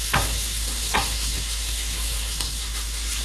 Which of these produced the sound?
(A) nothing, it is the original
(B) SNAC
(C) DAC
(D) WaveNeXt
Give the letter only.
B